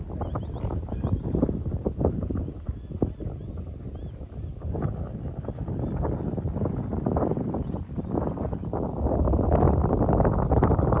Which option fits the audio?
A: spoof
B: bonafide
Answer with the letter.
B